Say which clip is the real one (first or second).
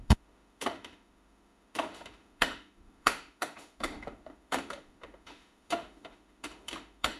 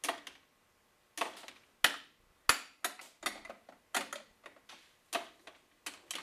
second